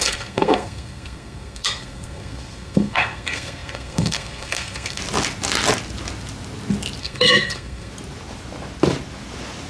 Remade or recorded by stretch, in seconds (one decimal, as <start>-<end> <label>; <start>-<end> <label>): 0.0-5.0 remade; 5.0-7.0 recorded; 7.0-7.9 remade; 7.9-9.7 recorded